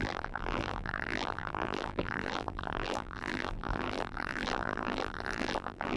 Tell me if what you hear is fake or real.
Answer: fake